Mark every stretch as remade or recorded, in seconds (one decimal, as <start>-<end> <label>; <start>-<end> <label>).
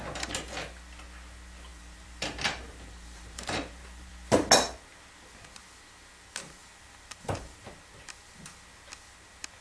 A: 0.0-1.7 recorded; 1.7-4.1 remade; 4.1-6.6 recorded; 6.6-7.7 remade; 7.7-9.6 recorded